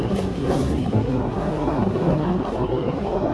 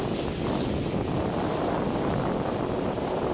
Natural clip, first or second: second